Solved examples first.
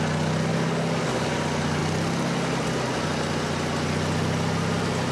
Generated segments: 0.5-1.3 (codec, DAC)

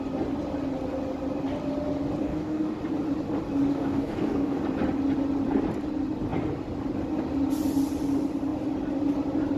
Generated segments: 2.2-2.8 (codec, DAC); 3.7-4.6

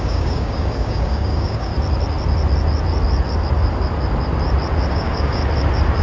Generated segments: 0.0-1.7 (codec, DAC); 4.9-5.4